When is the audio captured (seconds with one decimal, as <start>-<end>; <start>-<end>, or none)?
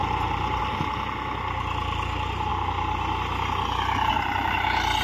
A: 0.0-5.0